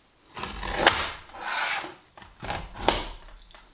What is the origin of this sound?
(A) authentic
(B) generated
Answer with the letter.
A